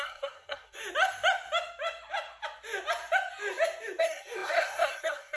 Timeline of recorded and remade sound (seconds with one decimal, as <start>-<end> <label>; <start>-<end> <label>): 0.0-0.8 remade; 0.8-4.0 recorded; 4.0-5.4 remade